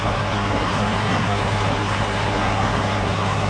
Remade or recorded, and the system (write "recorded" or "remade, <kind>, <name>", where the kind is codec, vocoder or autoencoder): remade, codec, SNAC